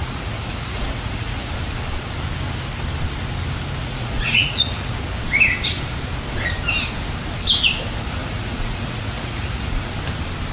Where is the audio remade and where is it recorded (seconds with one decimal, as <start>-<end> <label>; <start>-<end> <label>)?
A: 0.0-1.5 remade; 1.5-3.8 recorded; 3.8-4.9 remade; 4.9-8.2 recorded; 8.2-9.9 remade; 9.9-10.5 recorded